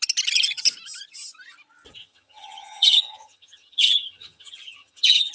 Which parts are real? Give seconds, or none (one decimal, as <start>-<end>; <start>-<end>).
0.0-2.0